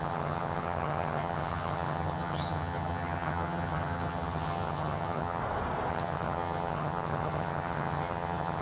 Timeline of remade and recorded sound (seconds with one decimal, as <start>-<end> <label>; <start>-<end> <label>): 0.0-5.4 remade; 5.4-5.9 recorded; 5.9-8.6 remade